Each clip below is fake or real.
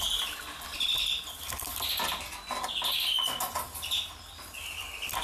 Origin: real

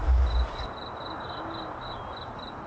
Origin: real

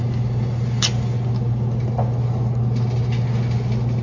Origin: real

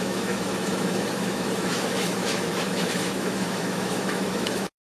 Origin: fake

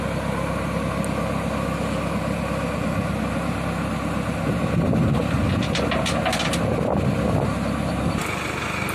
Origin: real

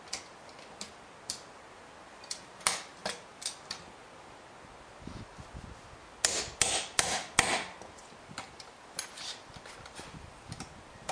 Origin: real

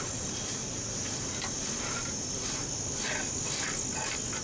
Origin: real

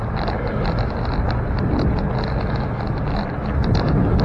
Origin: real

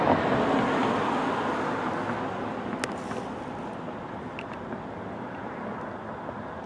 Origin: real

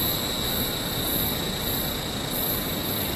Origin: real